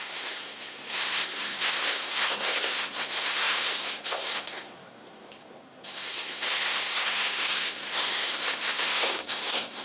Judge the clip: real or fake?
fake